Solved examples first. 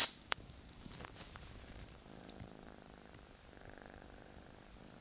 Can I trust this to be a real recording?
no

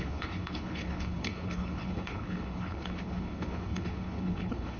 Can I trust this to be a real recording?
no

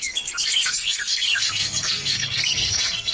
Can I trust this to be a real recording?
no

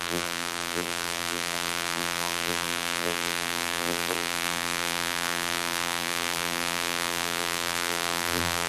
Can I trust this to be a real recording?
no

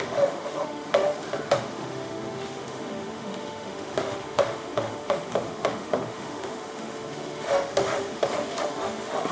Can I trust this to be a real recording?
no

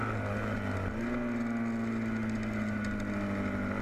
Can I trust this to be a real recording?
yes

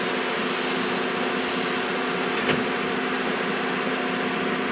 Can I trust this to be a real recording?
yes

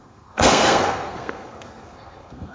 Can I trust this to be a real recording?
no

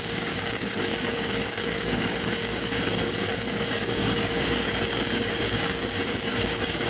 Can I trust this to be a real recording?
no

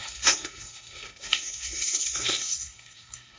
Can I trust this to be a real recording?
no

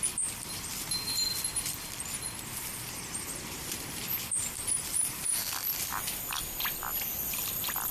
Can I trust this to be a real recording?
no